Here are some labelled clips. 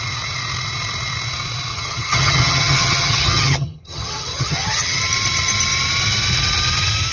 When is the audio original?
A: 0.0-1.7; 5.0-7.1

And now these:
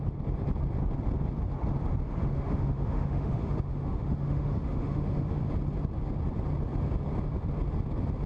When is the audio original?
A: 0.0-2.2; 5.4-8.3